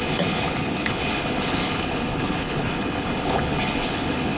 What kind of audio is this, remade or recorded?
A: remade